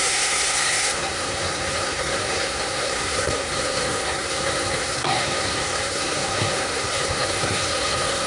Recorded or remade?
remade